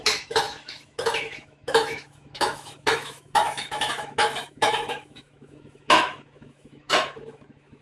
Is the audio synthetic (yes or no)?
yes